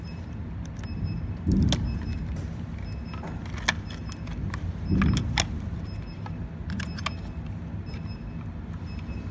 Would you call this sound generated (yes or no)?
no